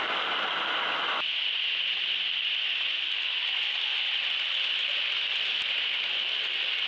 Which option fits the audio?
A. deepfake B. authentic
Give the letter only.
B